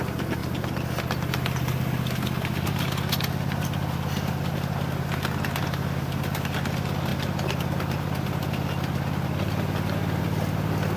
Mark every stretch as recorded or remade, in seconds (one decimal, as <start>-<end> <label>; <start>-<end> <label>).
0.0-11.0 recorded